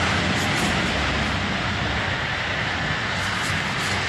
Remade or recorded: recorded